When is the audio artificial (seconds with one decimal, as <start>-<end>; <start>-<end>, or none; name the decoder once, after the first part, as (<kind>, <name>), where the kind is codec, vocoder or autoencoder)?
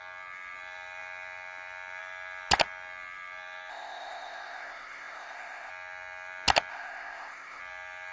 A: 3.7-5.7 (codec, ZipCodec); 6.7-7.6